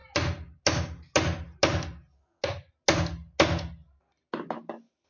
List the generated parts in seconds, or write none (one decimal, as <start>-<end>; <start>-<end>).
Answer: none